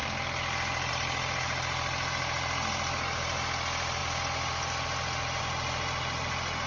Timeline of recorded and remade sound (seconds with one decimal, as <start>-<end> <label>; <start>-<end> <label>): 0.0-6.7 recorded